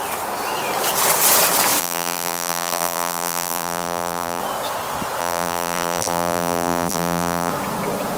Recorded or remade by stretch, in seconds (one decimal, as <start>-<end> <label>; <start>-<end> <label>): 0.0-1.8 recorded; 1.8-4.4 remade; 4.4-5.2 recorded; 5.2-7.5 remade; 7.5-8.2 recorded